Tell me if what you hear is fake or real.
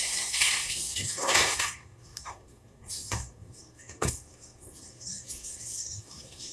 fake